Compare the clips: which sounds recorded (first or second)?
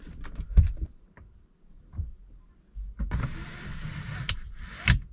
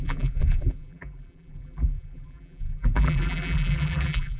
first